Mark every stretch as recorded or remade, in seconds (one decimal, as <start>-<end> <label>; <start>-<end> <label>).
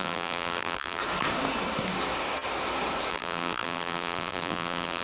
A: 0.0-1.0 remade; 1.0-3.1 recorded; 3.1-5.0 remade